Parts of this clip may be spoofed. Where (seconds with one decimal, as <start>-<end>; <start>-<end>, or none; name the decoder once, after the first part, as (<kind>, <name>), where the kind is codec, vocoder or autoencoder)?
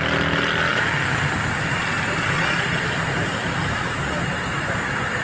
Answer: none